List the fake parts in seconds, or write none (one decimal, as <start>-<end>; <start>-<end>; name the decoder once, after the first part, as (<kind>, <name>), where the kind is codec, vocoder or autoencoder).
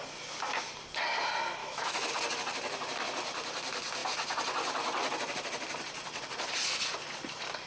1.6-2.1 (autoencoder, DAC-VAE)